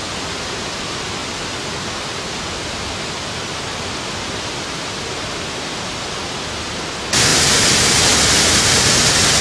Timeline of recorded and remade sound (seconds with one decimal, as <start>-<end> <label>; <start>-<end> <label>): 0.0-9.4 recorded